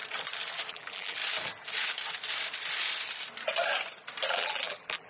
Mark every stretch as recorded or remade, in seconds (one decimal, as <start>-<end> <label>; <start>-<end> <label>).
0.0-0.7 recorded; 0.7-1.2 remade; 1.2-4.3 recorded; 4.3-5.1 remade